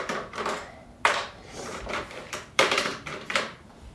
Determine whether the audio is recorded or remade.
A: remade